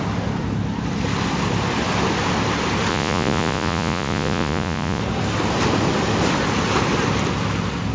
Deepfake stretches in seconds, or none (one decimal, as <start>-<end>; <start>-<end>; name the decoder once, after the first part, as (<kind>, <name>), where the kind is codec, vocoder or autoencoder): 2.9-5.0 (vocoder, Vocos)